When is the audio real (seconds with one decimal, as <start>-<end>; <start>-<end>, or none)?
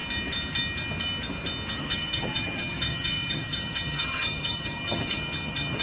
0.0-1.8